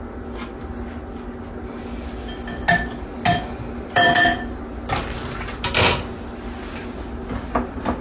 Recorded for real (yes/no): yes